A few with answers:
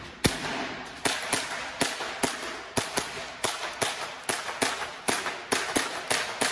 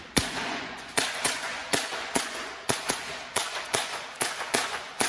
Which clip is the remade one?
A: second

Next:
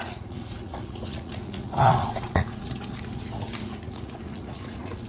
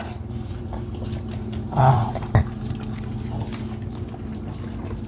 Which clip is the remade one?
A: first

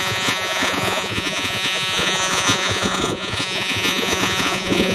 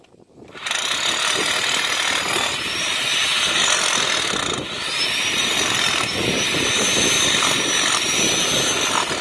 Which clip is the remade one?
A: first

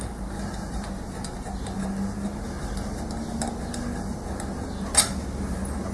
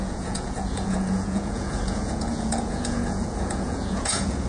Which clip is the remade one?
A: second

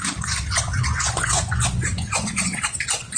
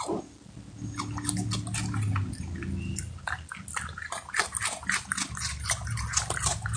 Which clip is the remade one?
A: first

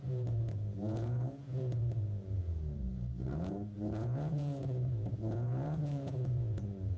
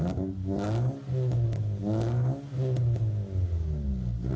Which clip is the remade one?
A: first